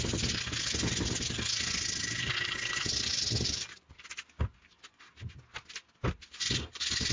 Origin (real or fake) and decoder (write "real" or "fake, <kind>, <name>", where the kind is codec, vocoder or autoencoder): real